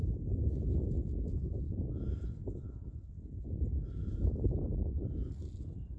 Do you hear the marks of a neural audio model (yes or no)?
no